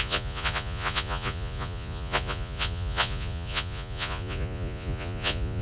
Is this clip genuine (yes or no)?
no